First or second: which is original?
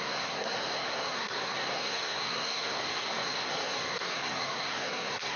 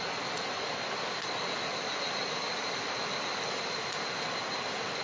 second